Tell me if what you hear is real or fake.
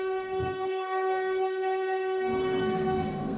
fake